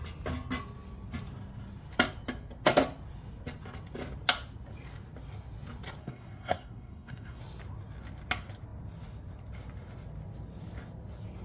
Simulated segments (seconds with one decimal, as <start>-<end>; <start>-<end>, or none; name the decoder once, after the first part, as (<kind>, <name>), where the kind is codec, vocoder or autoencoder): 6.0-7.4 (codec, SNAC)